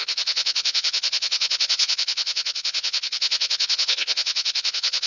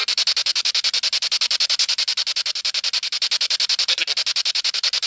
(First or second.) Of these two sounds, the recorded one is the second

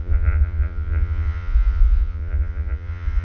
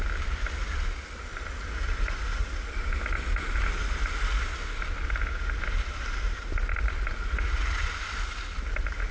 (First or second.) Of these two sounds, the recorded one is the second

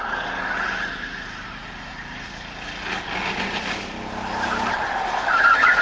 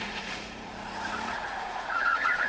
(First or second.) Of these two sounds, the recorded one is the first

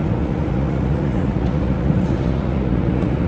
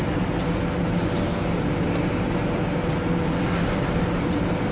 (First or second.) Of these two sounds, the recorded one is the second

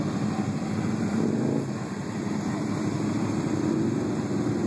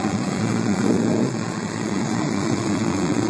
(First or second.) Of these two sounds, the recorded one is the first